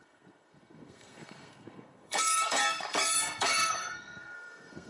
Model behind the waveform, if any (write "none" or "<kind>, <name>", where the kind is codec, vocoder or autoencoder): codec, SNAC